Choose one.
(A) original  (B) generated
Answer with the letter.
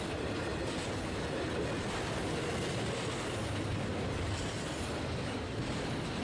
A